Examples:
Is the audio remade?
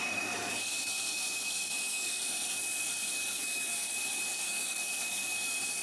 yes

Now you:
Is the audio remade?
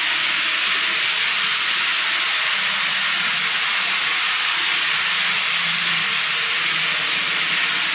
no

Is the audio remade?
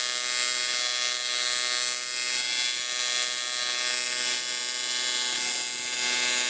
no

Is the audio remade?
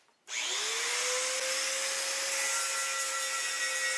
no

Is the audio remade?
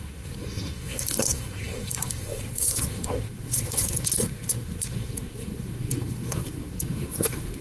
yes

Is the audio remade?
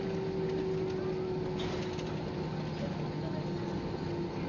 no